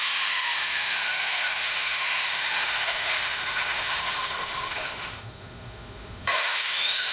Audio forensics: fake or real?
fake